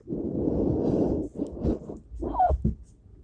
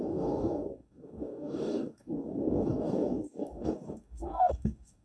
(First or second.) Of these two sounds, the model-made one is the second